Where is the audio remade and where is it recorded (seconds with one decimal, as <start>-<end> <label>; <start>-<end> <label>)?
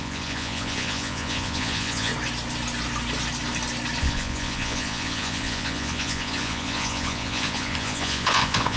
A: 0.0-2.1 remade; 2.1-4.0 recorded; 4.0-8.8 remade